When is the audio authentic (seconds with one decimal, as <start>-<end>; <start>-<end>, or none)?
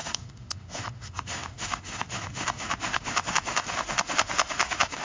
none